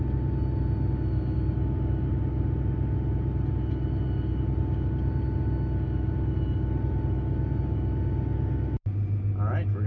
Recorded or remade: recorded